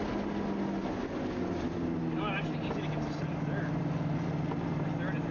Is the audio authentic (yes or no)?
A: yes